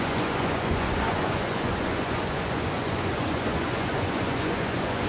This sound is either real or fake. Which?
fake